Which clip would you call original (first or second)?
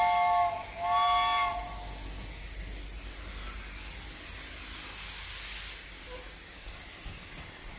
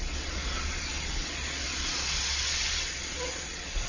first